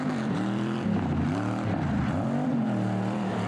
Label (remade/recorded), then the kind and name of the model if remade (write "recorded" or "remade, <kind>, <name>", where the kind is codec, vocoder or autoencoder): remade, vocoder, BigVGAN v2